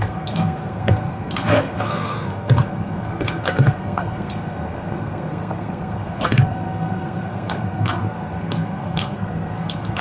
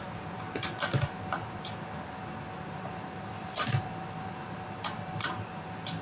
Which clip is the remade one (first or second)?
first